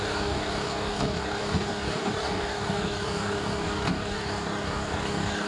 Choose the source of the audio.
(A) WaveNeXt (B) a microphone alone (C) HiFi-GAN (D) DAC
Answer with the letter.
D